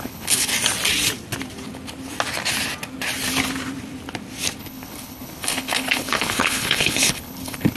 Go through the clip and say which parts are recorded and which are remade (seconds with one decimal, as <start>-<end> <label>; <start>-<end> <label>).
0.0-0.5 remade; 0.5-4.6 recorded; 4.6-7.8 remade